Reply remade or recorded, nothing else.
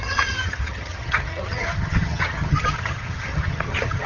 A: remade